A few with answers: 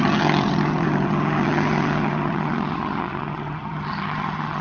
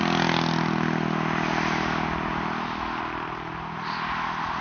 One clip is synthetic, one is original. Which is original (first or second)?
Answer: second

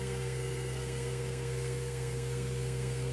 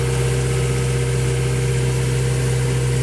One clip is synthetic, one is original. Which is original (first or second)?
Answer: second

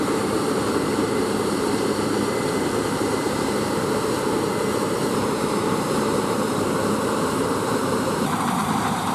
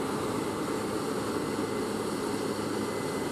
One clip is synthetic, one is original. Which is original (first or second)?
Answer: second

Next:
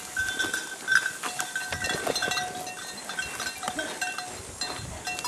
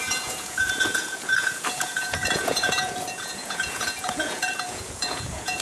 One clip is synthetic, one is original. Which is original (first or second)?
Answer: first